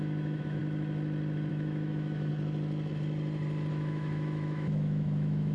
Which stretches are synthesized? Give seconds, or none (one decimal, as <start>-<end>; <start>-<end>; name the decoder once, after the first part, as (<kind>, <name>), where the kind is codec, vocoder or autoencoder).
0.0-0.6 (autoencoder, DAC-VAE); 1.5-2.3; 3.7-5.5